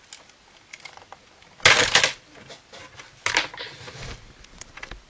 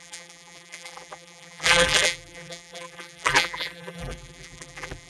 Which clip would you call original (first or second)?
first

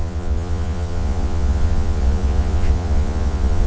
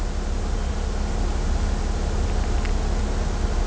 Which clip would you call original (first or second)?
second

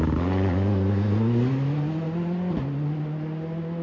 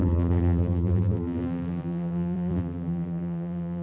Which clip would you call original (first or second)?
first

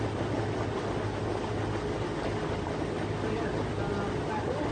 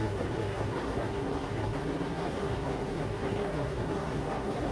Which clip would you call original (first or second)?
first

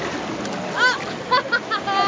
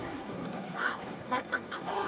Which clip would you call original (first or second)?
first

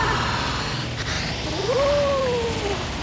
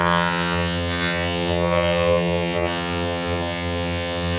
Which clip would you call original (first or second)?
first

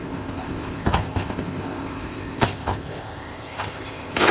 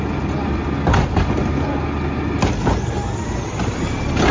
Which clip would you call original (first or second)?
second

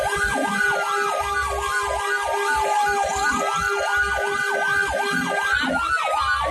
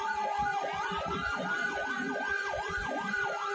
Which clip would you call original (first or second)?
first